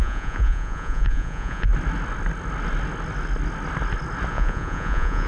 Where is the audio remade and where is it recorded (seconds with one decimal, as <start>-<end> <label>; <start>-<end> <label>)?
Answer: 0.0-1.7 remade; 1.7-4.3 recorded; 4.3-5.3 remade

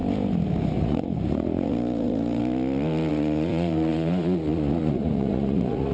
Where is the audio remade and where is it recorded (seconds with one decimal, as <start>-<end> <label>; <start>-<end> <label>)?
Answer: 0.0-0.8 recorded; 0.8-2.4 remade; 2.4-3.1 recorded; 3.1-5.9 remade

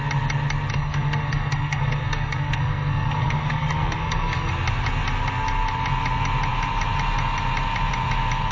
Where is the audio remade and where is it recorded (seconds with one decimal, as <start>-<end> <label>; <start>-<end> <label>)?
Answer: 0.0-0.7 recorded; 0.7-4.5 remade; 4.5-8.5 recorded

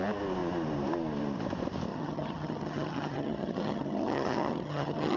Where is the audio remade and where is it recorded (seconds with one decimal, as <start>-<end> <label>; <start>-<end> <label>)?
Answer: 0.0-1.9 recorded; 1.9-5.2 remade

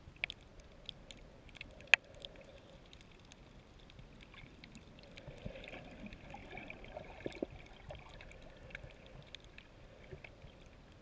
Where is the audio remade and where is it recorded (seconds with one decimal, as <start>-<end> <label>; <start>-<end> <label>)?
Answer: 0.0-11.0 recorded

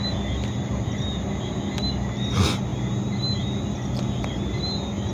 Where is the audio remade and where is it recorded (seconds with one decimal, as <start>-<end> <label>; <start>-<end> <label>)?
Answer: 0.0-5.1 recorded